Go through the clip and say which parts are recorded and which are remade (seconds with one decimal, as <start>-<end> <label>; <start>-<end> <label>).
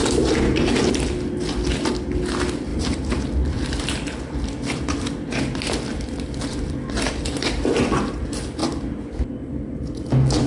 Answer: 0.0-2.7 recorded; 2.7-7.8 remade; 7.8-8.6 recorded; 8.6-9.7 remade; 9.7-10.5 recorded